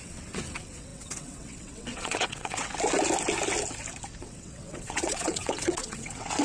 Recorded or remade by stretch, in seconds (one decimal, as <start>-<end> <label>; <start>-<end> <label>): 0.0-2.7 remade; 2.7-4.2 recorded; 4.2-6.4 remade